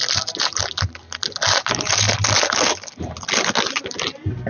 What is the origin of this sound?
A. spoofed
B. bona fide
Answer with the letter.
B